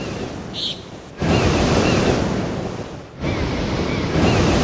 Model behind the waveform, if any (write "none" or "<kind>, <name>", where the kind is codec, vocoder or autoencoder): none